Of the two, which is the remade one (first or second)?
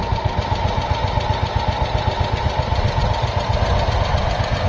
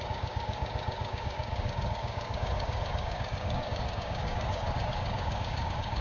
second